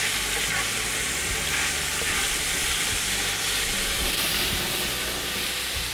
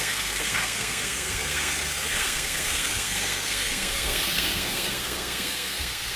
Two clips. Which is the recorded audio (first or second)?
first